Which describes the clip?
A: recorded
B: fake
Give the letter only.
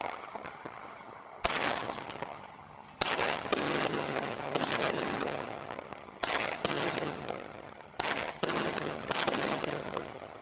B